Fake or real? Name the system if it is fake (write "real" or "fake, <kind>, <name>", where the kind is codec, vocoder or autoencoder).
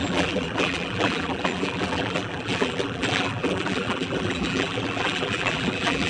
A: fake, vocoder, BigVGAN v2